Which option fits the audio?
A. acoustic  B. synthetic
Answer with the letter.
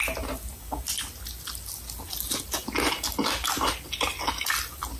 A